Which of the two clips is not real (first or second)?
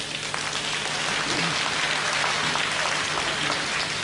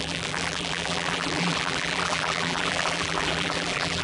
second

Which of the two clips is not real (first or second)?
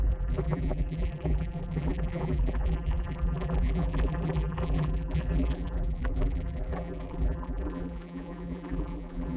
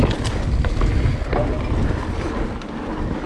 first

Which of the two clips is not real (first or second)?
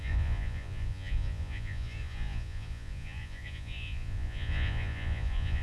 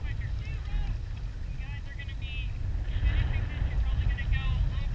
first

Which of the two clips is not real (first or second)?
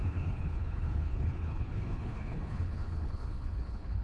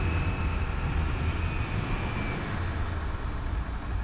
first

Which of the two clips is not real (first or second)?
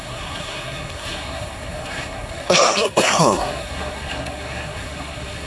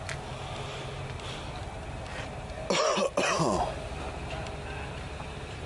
first